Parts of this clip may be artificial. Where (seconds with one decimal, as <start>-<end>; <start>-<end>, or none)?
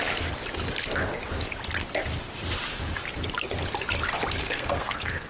4.4-5.3